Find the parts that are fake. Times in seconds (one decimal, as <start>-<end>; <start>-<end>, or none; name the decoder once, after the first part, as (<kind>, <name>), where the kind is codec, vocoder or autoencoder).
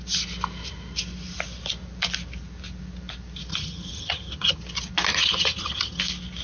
3.5-4.6 (vocoder, HiFi-GAN); 5.1-6.0